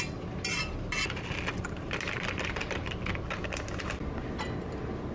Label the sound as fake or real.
real